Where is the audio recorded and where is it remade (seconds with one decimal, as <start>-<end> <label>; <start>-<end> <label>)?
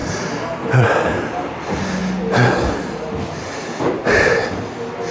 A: 0.0-5.1 recorded